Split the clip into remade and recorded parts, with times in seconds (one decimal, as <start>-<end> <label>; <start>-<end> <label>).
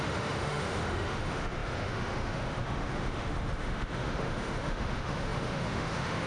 0.0-6.3 remade